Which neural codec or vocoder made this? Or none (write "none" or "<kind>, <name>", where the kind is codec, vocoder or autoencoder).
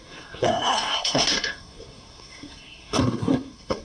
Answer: codec, SNAC